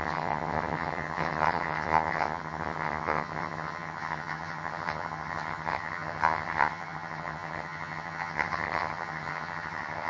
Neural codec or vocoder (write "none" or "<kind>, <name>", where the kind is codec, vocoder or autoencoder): vocoder, HiFi-GAN